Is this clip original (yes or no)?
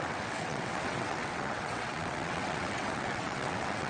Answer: no